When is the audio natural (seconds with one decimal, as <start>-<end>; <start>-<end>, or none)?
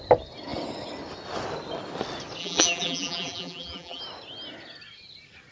0.0-2.4; 4.0-5.5